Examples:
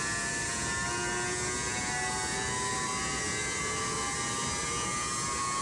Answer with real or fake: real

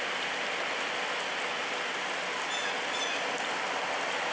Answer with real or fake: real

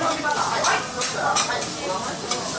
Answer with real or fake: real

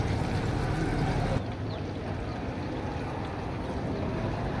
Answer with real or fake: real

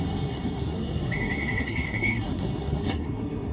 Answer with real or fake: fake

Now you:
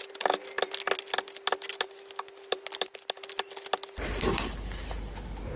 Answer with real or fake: real